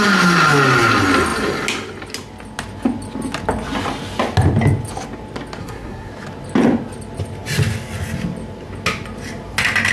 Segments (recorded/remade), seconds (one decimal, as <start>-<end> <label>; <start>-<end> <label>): 0.0-5.6 recorded; 5.6-6.1 remade; 6.1-9.9 recorded